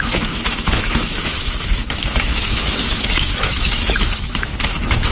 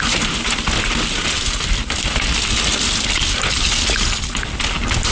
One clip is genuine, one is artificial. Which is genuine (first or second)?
second